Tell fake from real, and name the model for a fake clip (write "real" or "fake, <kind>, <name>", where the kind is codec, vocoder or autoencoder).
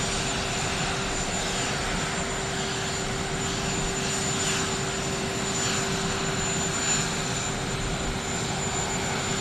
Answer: real